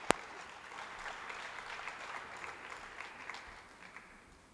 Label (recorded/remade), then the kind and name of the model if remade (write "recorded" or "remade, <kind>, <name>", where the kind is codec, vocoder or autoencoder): recorded